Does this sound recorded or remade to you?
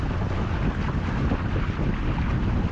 recorded